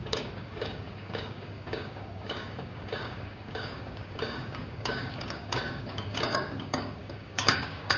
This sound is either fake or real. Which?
fake